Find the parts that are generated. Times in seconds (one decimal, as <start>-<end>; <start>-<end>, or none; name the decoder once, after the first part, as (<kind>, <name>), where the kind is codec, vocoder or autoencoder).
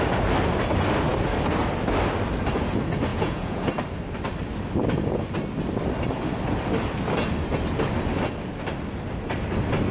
3.1-3.7 (vocoder, Vocos)